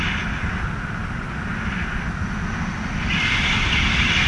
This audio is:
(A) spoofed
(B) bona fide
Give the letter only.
B